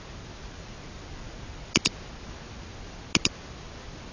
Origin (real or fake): real